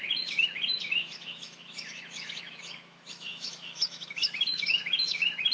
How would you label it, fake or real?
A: fake